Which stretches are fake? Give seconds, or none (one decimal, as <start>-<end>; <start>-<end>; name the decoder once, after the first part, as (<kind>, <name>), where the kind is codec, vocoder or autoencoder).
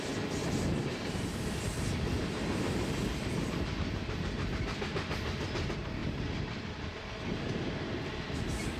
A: 0.4-0.9 (vocoder, BigVGAN v2); 6.0-7.0